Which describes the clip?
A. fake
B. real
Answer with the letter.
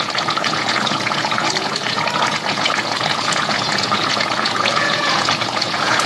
A